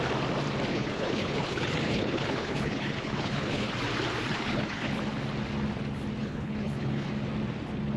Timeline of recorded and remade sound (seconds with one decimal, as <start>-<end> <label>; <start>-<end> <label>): 0.0-0.7 recorded; 0.7-3.7 remade; 3.7-4.3 recorded; 4.3-4.9 remade; 4.9-6.2 recorded; 6.2-7.1 remade; 7.1-8.0 recorded